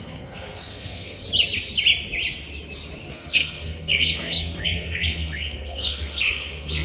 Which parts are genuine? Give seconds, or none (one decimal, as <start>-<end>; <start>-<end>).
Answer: 1.2-3.1